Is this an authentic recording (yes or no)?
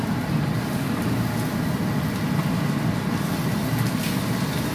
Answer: yes